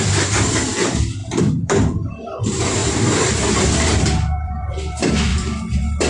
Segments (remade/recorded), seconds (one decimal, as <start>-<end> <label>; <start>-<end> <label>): 0.0-6.1 remade